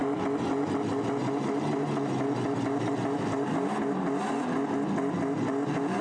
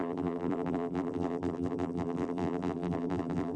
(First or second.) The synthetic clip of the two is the second